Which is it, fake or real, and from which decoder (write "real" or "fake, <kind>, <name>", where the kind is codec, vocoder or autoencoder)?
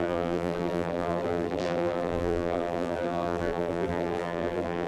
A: fake, vocoder, BigVGAN v2